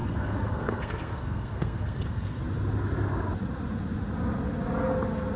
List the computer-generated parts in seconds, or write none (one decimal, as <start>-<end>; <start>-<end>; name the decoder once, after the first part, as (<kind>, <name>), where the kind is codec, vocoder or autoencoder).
0.0-2.4 (codec, SNAC)